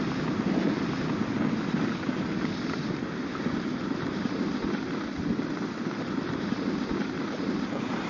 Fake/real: real